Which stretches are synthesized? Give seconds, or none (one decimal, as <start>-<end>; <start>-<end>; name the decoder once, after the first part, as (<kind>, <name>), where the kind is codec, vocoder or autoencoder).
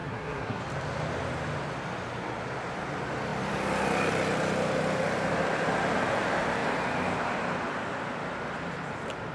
0.0-0.6 (codec, SNAC)